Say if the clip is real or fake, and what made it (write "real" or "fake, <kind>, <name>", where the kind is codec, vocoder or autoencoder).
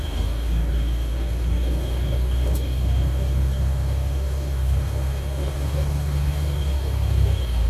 fake, codec, DAC